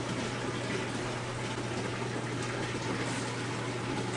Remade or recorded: recorded